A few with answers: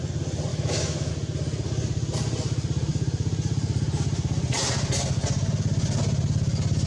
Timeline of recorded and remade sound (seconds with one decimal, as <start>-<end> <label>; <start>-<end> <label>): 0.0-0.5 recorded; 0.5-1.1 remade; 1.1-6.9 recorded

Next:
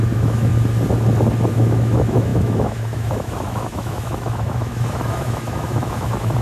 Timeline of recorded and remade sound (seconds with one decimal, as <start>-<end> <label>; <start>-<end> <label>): 0.0-0.5 remade; 0.5-1.5 recorded; 1.5-6.4 remade

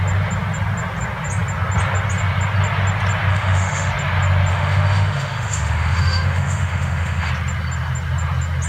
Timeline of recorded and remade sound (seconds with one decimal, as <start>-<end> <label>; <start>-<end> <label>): 0.0-3.3 recorded; 3.3-3.9 remade; 3.9-4.5 recorded; 4.5-7.3 remade; 7.3-8.7 recorded

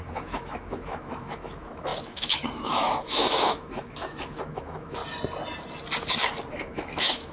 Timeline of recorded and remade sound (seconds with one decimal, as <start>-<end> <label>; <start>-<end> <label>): 0.0-5.0 remade; 5.0-6.5 recorded; 6.5-7.3 remade